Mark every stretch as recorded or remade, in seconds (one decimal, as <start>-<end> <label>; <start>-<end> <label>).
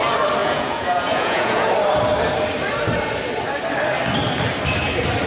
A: 0.0-0.4 recorded; 0.4-1.7 remade; 1.7-5.3 recorded